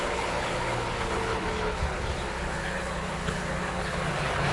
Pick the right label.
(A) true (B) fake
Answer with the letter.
B